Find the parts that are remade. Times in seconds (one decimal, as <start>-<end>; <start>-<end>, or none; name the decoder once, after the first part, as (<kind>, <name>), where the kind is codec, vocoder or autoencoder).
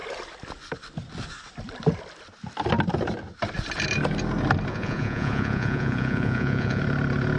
4.7-6.8 (vocoder, Vocos)